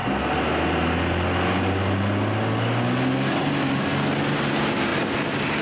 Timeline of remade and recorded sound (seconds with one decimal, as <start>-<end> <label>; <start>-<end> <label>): 0.0-5.6 recorded